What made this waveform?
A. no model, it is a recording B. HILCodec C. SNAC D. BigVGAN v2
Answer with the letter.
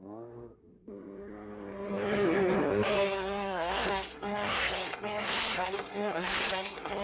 C